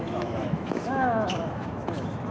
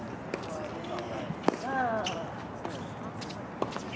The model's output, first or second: first